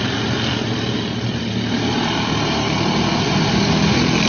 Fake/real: real